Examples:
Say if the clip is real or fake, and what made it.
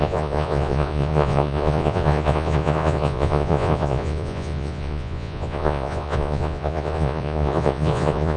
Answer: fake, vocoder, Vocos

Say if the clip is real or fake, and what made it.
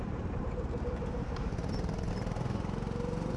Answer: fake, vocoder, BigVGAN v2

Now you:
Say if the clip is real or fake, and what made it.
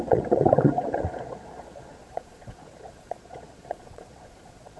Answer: fake, vocoder, Vocos